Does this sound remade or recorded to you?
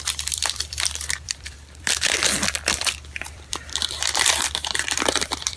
remade